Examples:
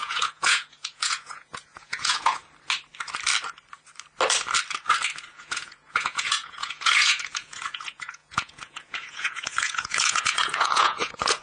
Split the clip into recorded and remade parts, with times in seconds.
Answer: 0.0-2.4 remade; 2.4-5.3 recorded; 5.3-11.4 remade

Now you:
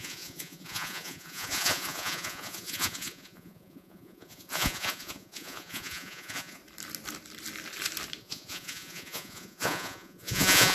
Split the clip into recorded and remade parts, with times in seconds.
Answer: 0.0-6.6 remade; 6.6-8.2 recorded; 8.2-10.7 remade

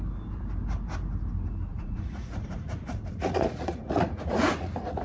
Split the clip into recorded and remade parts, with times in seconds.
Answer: 0.0-1.7 recorded; 1.7-5.0 remade

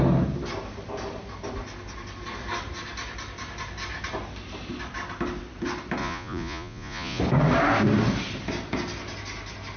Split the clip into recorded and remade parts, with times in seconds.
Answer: 0.0-6.0 recorded; 6.0-7.2 remade; 7.2-9.8 recorded

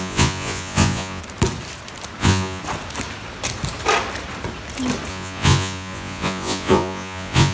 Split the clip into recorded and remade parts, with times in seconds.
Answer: 0.0-1.2 remade; 1.2-2.2 recorded; 2.2-2.6 remade; 2.6-5.1 recorded; 5.1-7.5 remade

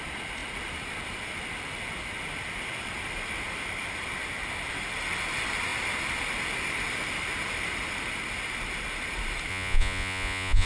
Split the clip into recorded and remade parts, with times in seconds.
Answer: 0.0-9.5 recorded; 9.5-10.7 remade